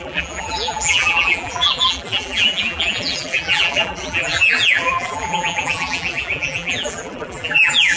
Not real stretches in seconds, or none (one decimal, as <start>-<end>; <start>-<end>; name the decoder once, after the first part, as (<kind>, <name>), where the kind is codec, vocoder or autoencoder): 0.0-8.0 (vocoder, BigVGAN v2)

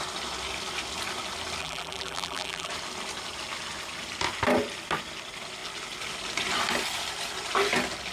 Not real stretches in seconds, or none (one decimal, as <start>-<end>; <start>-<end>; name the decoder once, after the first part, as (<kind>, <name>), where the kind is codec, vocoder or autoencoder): 1.6-2.7 (vocoder, BigVGAN v2)

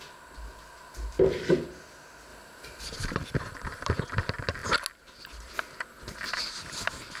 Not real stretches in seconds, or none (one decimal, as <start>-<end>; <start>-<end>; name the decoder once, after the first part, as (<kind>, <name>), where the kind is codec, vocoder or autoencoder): 2.3-3.9 (vocoder, BigVGAN v2)

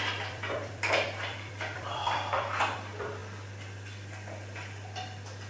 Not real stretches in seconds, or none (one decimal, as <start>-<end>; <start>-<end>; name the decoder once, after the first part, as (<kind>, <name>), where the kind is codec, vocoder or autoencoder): 0.0-3.2 (vocoder, BigVGAN v2)